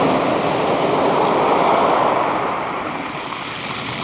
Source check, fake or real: real